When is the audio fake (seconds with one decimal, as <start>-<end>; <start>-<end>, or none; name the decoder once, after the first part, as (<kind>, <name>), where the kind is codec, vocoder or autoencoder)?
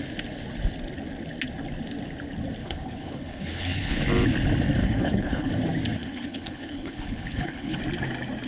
2.6-4.0 (codec, HILCodec); 4.8-5.5; 6.0-7.8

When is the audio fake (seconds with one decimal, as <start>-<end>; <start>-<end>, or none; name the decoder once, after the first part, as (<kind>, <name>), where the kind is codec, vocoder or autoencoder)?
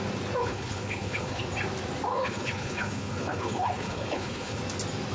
0.4-1.4 (codec, HILCodec); 2.1-4.6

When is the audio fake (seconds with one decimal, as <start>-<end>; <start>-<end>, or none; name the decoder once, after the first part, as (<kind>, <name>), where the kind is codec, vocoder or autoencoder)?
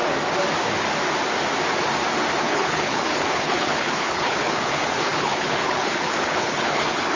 2.4-7.2 (codec, HILCodec)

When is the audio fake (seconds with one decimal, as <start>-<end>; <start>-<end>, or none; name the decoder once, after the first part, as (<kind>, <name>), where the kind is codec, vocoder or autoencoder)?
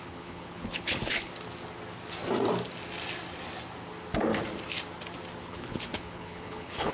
0.0-1.3 (codec, HILCodec); 5.4-6.9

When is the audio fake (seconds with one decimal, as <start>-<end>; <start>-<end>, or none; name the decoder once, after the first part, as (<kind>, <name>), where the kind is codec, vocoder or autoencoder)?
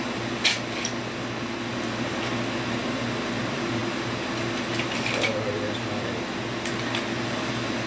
none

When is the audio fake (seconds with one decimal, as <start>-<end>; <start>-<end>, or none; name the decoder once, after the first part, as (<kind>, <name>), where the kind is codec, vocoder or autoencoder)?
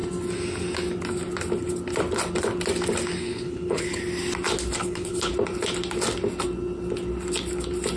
3.2-4.0 (codec, HILCodec); 4.8-5.3